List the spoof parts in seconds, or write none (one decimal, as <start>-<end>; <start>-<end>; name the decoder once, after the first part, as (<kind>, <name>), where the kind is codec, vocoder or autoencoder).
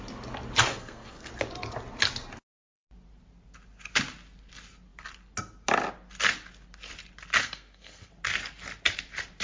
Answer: 0.7-1.3 (codec, SNAC); 7.4-8.1